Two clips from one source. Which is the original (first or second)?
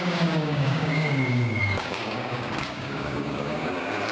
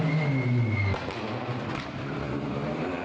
second